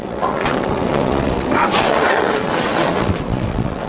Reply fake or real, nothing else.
fake